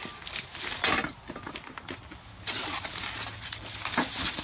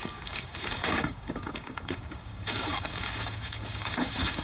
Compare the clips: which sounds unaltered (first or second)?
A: first